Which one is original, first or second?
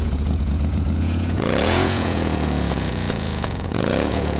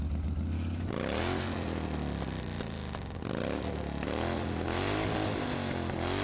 second